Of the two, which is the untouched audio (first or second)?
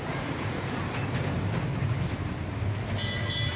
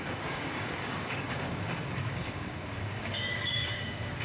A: first